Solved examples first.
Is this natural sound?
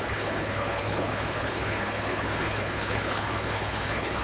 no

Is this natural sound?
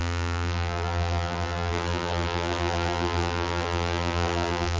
no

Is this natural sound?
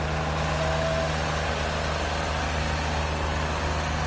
yes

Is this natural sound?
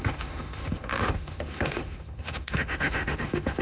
no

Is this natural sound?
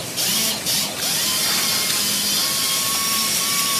yes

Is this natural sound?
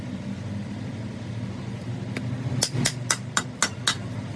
yes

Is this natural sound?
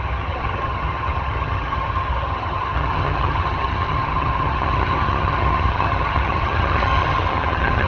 no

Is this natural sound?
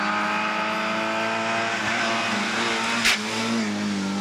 yes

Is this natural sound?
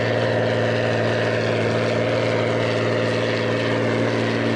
yes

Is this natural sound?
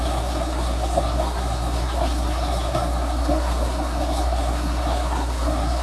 no